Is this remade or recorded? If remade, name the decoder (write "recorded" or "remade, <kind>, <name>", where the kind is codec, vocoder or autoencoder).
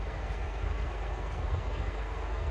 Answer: remade, codec, SNAC